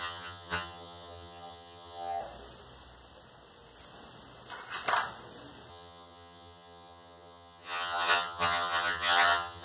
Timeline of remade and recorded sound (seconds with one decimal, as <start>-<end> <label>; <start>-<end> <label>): 0.0-2.2 remade; 2.2-5.7 recorded; 5.7-9.6 remade